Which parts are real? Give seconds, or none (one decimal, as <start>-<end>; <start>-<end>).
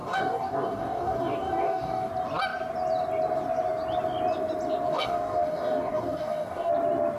2.1-4.9; 6.7-7.2